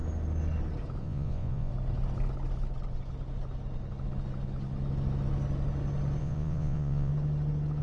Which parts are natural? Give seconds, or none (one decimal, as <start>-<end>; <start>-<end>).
0.0-1.0; 1.7-6.2; 7.1-7.8